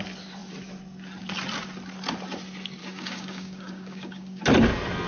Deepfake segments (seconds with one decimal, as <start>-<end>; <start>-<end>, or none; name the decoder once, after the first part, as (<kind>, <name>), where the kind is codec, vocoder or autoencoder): 2.8-4.4 (codec, DAC)